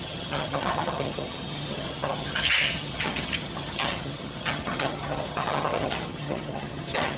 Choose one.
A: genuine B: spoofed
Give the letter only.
B